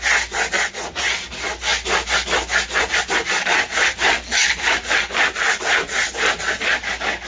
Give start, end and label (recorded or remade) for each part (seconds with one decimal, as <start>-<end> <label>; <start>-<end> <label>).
0.0-7.3 recorded